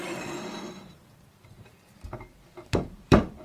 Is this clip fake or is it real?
fake